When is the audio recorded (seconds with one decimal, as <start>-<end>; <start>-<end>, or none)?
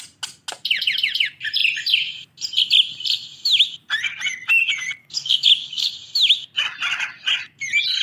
0.0-5.0; 5.9-8.0